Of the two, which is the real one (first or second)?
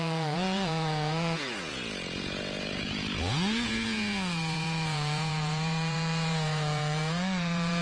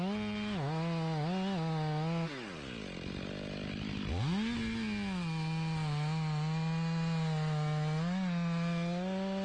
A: second